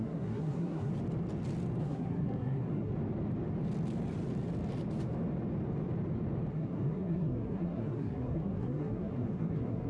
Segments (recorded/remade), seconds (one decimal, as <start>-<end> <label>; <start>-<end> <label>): 0.0-0.9 remade; 0.9-1.8 recorded; 1.8-2.9 remade; 2.9-6.5 recorded; 6.5-9.9 remade